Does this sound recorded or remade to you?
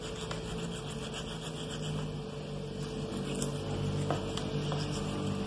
recorded